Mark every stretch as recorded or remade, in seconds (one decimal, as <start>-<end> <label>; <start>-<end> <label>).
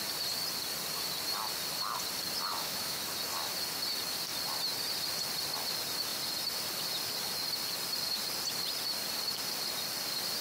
0.0-2.5 recorded; 2.5-3.0 remade; 3.0-10.4 recorded